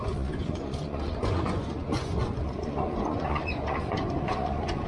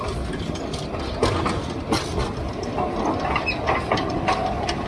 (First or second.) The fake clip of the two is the first